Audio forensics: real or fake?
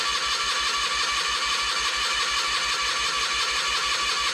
real